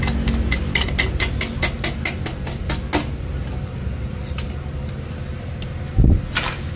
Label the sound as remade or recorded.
recorded